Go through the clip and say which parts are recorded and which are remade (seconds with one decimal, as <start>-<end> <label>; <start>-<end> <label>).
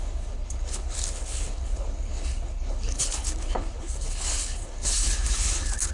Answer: 0.0-5.9 remade